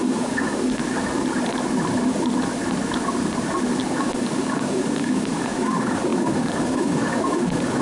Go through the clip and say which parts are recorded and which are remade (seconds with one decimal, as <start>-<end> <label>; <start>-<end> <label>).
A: 0.0-0.8 remade; 0.8-4.0 recorded; 4.0-7.8 remade

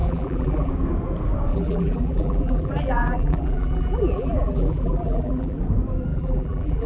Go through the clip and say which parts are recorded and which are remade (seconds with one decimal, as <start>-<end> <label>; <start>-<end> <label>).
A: 0.0-0.7 remade; 0.7-1.5 recorded; 1.5-5.6 remade; 5.6-6.1 recorded; 6.1-6.9 remade

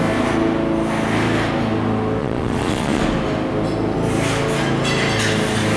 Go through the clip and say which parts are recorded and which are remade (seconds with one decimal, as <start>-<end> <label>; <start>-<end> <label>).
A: 0.0-2.2 recorded; 2.2-3.0 remade; 3.0-5.8 recorded

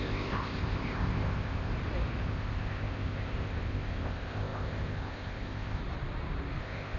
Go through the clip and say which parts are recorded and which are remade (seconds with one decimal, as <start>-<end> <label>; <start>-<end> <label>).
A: 0.0-1.7 remade; 1.7-2.2 recorded; 2.2-5.8 remade; 5.8-6.6 recorded; 6.6-7.0 remade

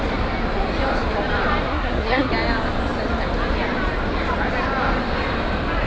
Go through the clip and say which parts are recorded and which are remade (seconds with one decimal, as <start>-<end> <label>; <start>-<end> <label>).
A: 0.0-1.7 recorded; 1.7-2.3 remade; 2.3-5.9 recorded

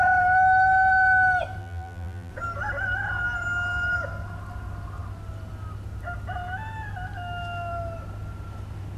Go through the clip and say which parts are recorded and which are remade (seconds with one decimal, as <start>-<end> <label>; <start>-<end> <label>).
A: 0.0-1.6 recorded; 1.6-2.3 remade; 2.3-9.0 recorded